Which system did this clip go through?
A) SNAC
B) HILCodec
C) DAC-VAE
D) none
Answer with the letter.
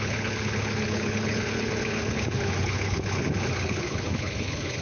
B